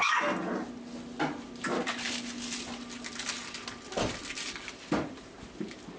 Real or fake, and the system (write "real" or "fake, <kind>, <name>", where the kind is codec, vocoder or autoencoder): real